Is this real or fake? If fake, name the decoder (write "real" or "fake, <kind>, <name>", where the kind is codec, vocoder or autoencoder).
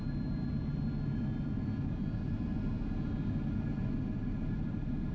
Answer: real